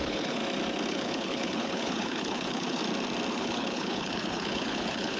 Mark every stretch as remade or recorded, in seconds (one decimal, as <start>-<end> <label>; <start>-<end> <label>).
0.0-0.4 remade; 0.4-0.9 recorded; 0.9-2.8 remade; 2.8-3.3 recorded; 3.3-5.2 remade